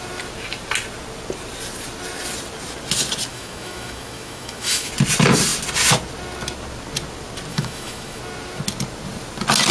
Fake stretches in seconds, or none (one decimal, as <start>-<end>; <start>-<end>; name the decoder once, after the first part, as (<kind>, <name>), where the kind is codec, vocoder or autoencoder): 3.3-4.9 (autoencoder, DAC-VAE); 7.5-8.2